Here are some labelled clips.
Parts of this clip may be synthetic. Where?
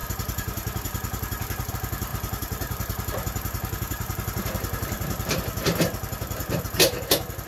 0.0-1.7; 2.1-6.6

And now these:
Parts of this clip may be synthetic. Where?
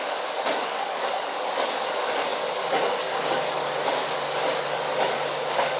0.0-5.8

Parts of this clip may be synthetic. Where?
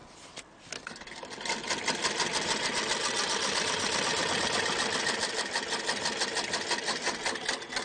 none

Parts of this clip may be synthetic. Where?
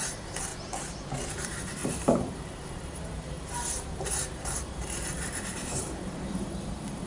0.0-0.5; 1.3-7.1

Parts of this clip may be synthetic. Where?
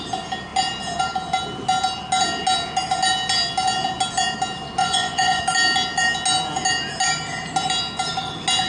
4.8-5.4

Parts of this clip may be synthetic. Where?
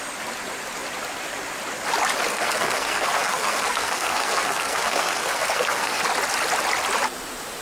2.3-6.0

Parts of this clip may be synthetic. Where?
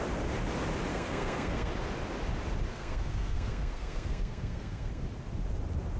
0.9-1.7; 2.7-5.0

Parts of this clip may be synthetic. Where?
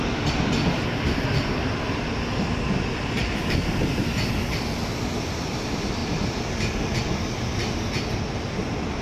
none